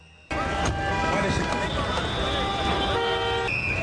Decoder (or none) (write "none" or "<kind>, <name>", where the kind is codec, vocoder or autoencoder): none